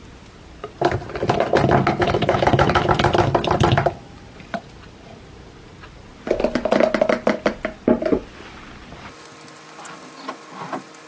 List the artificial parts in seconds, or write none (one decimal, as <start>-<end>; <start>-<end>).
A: 2.0-2.8